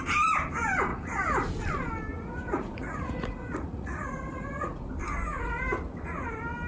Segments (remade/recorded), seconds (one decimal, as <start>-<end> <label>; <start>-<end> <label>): 0.0-0.9 recorded; 0.9-1.5 remade; 1.5-2.1 recorded; 2.1-4.9 remade; 4.9-6.7 recorded